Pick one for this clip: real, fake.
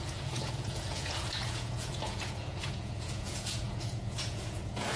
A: fake